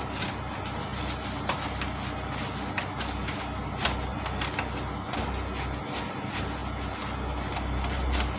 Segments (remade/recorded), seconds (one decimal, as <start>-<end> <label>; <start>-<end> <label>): 0.0-8.4 recorded